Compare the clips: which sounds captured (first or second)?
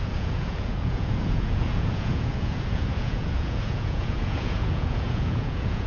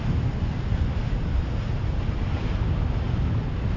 second